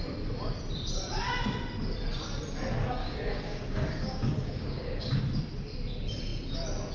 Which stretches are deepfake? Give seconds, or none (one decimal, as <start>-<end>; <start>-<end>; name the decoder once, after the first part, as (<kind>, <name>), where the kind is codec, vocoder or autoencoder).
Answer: 3.0-5.2 (codec, DAC)